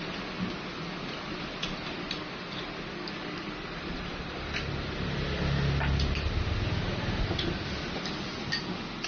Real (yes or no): yes